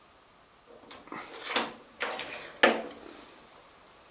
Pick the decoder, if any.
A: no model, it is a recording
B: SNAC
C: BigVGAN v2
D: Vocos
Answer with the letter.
A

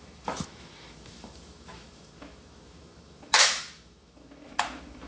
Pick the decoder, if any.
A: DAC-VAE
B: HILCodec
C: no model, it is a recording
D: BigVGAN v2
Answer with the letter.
A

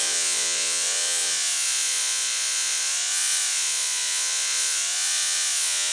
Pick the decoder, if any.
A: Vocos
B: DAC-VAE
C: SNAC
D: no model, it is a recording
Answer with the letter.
A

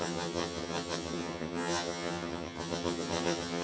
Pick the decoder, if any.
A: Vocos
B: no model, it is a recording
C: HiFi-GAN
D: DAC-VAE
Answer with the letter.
C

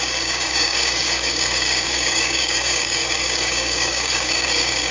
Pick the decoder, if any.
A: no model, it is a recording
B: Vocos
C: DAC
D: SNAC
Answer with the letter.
C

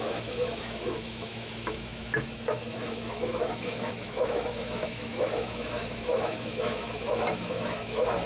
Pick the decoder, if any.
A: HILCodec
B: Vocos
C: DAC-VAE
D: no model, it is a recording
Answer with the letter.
C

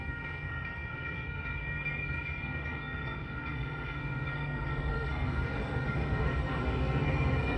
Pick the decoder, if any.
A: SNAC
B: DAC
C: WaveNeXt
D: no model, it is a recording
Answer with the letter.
A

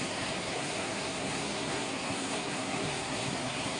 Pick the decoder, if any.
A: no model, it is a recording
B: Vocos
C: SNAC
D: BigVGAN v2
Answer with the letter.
C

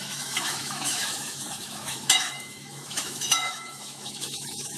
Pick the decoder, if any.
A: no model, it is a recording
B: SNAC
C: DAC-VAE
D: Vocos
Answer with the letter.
C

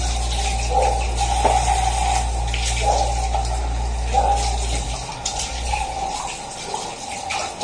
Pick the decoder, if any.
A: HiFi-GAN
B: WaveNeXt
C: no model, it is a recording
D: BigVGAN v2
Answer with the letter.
C